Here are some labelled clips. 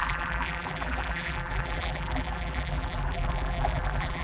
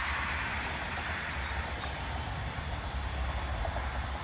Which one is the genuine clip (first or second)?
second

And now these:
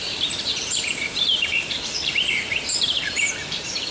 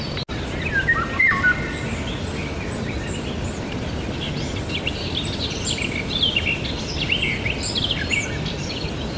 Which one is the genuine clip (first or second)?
second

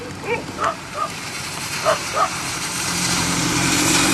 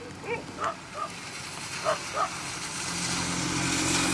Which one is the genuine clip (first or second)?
second